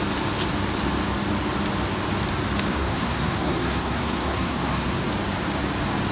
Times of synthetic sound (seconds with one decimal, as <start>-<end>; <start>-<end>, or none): 2.7-5.1